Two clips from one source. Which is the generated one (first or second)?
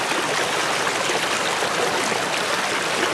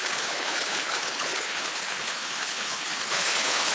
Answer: second